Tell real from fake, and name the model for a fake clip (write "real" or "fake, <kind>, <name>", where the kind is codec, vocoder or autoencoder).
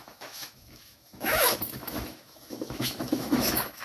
fake, autoencoder, DAC-VAE